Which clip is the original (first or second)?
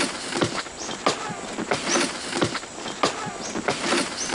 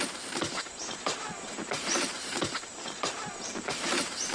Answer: first